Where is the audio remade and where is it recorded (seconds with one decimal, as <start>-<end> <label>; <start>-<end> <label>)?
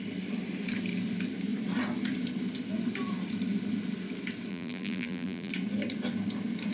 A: 0.0-4.5 recorded; 4.5-5.5 remade; 5.5-6.7 recorded